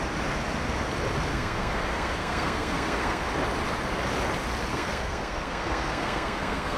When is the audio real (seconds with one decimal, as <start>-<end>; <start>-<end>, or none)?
0.0-1.3; 3.3-4.7